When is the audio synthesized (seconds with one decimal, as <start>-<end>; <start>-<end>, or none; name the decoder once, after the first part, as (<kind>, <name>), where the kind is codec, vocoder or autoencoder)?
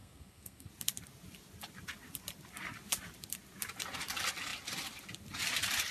0.0-0.7 (codec, SNAC)